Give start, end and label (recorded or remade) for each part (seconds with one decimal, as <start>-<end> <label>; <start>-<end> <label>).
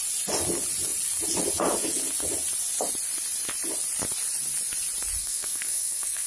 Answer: 0.0-5.2 recorded; 5.2-6.3 remade